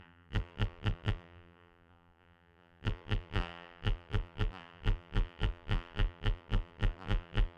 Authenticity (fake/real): fake